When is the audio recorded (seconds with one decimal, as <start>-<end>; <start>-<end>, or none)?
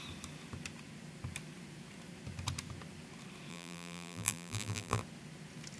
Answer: 0.0-3.5; 5.0-5.8